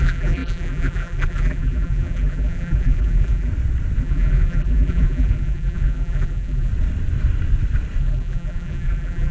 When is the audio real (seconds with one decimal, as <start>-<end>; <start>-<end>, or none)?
3.5-4.0; 6.7-8.0